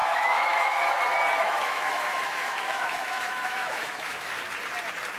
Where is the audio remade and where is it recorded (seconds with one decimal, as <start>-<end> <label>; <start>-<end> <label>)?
0.0-1.0 remade; 1.0-1.4 recorded; 1.4-4.5 remade; 4.5-5.2 recorded